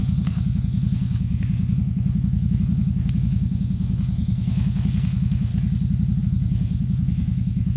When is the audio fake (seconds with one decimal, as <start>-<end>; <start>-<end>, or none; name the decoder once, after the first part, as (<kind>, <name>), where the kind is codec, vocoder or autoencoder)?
0.0-5.5 (codec, SNAC); 6.2-7.8

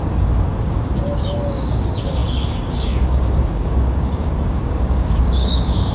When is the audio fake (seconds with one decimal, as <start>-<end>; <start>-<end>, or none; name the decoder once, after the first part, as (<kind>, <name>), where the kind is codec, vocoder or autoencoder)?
0.0-5.9 (codec, DAC)

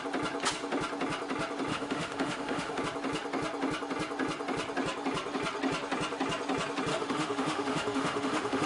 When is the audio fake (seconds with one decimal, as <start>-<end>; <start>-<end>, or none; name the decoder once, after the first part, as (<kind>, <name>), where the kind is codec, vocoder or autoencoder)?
1.7-2.8 (autoencoder, DAC-VAE); 6.9-8.7

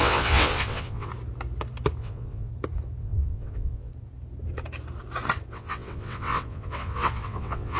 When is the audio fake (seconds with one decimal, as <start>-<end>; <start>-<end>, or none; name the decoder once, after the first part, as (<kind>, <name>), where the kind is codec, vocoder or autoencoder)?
0.0-1.1 (vocoder, WaveNeXt); 2.0-2.5; 3.0-3.9; 5.5-7.8